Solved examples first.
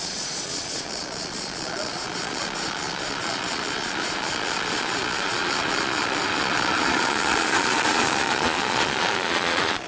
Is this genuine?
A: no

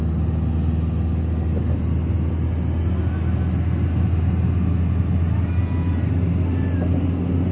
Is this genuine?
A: yes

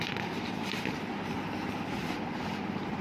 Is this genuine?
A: yes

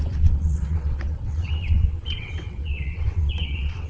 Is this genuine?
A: no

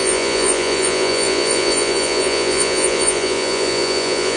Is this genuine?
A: no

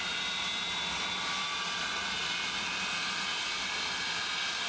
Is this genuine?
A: yes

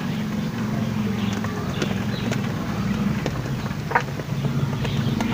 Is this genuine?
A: yes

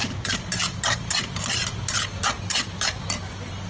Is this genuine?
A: yes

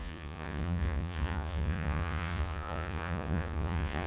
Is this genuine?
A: no